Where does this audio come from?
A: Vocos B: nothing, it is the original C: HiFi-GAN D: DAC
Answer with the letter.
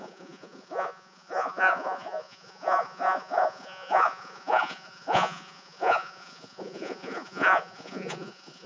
A